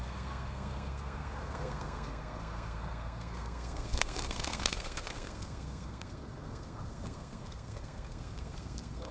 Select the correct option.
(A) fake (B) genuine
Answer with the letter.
A